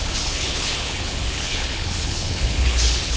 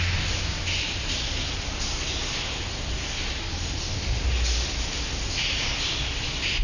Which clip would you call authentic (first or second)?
second